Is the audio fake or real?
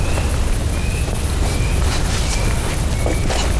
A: real